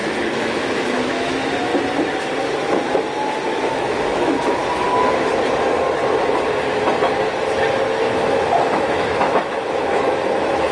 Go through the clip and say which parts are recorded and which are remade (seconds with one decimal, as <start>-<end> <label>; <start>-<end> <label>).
0.0-1.7 remade; 1.7-3.5 recorded; 3.5-4.6 remade; 4.6-8.7 recorded; 8.7-10.7 remade